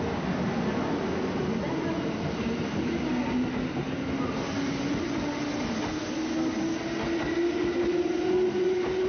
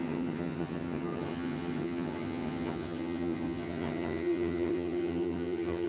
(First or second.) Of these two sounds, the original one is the first